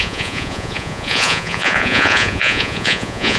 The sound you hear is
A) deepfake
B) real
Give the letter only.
A